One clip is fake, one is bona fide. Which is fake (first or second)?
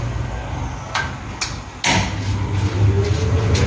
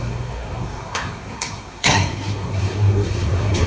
second